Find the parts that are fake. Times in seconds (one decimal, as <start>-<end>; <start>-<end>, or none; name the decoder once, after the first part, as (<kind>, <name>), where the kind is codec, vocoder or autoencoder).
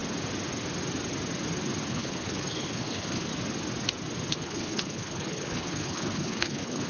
1.9-3.3 (codec, HILCodec); 4.3-6.9